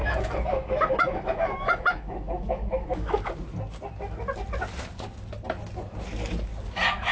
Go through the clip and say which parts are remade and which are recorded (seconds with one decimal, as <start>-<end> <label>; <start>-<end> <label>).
0.0-3.3 remade; 3.3-7.1 recorded